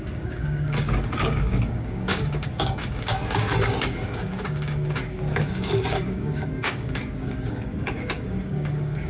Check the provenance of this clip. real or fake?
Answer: fake